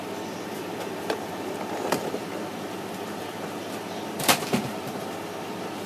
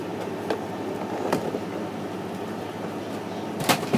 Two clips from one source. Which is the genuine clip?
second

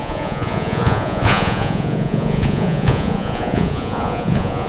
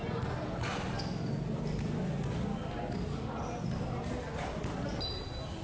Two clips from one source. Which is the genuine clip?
second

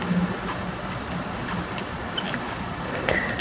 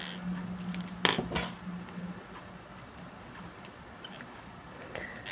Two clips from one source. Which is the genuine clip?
second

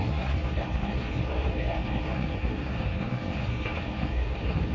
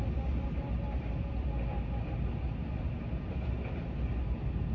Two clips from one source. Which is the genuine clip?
second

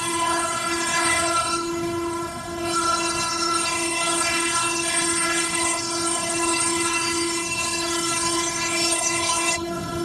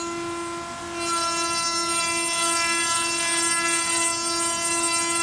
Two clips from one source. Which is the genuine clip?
second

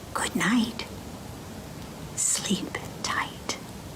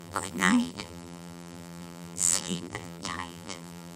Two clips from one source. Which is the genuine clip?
first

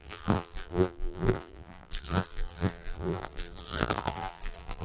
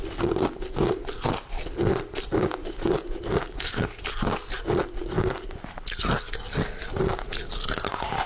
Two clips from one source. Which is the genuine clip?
second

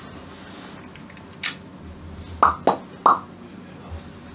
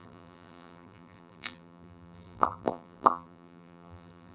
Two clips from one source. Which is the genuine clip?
first